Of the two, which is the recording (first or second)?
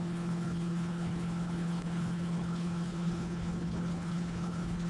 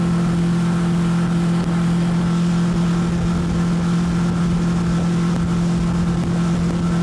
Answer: second